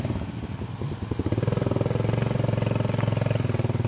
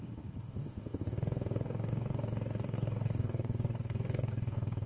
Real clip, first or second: first